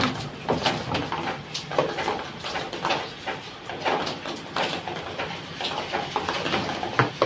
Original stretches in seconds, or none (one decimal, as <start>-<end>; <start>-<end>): 0.0-7.3